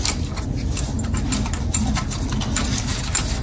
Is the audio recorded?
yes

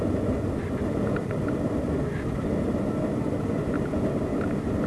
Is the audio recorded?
yes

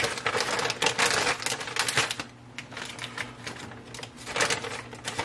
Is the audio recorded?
yes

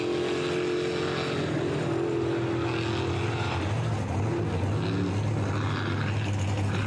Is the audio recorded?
yes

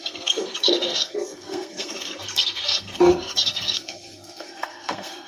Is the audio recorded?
no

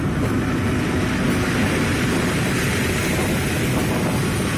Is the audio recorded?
yes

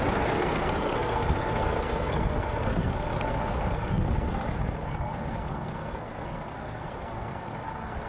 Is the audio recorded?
no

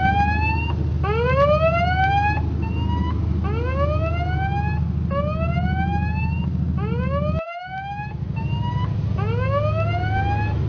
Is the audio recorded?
yes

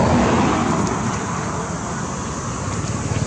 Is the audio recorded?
yes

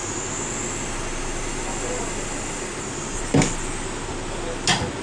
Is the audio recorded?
yes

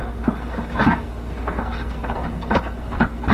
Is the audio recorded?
no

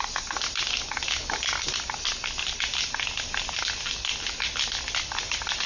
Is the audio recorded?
yes